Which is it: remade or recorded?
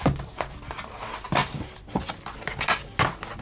recorded